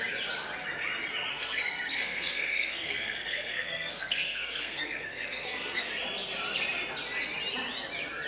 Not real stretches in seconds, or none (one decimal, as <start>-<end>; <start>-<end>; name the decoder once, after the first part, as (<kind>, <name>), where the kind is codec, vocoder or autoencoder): 1.3-5.9 (codec, SNAC)